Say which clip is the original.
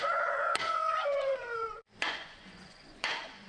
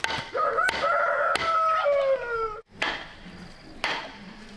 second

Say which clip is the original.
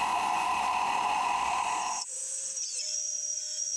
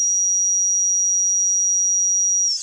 second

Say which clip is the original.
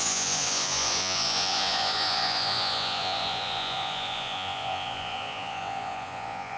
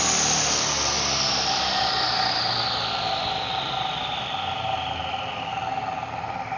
second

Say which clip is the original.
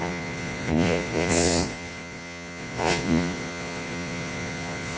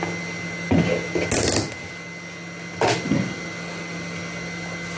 second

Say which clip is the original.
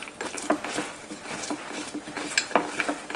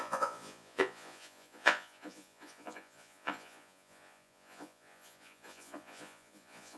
first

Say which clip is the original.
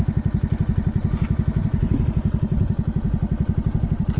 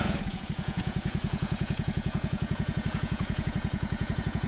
first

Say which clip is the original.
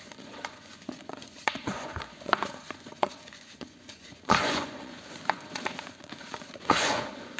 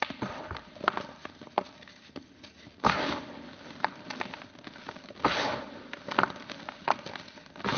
second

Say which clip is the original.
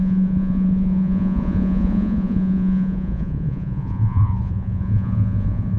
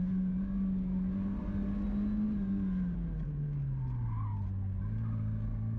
second